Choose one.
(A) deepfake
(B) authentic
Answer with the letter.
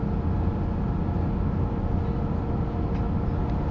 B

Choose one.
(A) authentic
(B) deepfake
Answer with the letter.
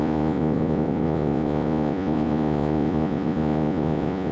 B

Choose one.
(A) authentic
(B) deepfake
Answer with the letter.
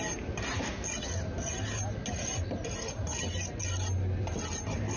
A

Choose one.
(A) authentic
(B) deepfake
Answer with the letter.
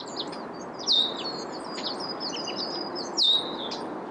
A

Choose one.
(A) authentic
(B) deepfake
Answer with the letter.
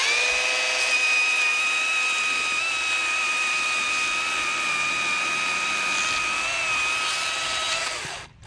A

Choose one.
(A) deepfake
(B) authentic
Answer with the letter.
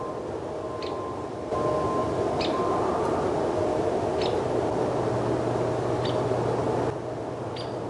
B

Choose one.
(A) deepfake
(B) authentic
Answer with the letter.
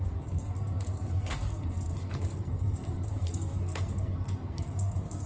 A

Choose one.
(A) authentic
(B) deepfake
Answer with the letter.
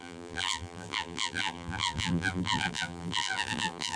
B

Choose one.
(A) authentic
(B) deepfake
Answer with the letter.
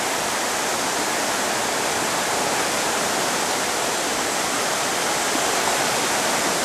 A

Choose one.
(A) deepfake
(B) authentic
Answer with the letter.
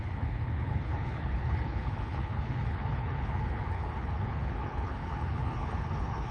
A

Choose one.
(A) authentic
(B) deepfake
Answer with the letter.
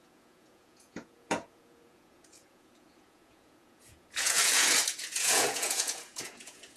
B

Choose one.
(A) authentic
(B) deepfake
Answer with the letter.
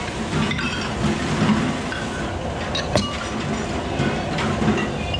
A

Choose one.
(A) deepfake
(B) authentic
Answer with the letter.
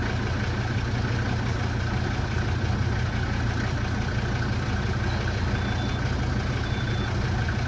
B